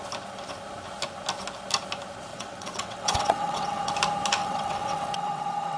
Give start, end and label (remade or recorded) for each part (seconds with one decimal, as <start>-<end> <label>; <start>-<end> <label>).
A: 0.0-2.3 recorded; 2.3-3.9 remade; 3.9-4.4 recorded; 4.4-5.8 remade